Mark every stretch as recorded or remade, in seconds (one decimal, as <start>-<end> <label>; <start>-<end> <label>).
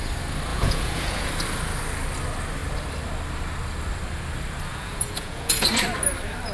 0.0-0.5 recorded; 0.5-1.3 remade; 1.3-4.7 recorded; 4.7-5.7 remade; 5.7-6.5 recorded